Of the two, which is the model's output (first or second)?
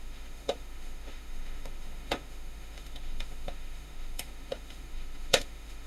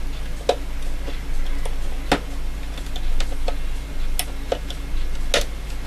first